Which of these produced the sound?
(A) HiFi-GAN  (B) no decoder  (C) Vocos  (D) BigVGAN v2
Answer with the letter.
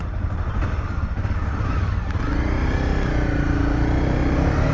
B